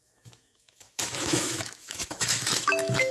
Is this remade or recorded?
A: remade